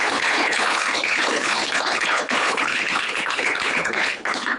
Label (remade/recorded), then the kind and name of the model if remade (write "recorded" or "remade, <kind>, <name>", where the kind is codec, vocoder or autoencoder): remade, codec, HILCodec